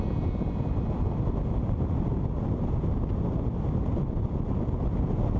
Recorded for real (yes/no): yes